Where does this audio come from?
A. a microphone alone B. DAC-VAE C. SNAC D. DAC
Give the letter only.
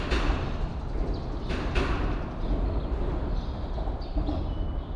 A